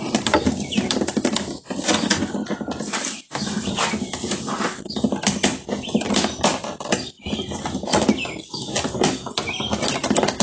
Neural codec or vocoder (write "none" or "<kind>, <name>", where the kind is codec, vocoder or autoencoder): none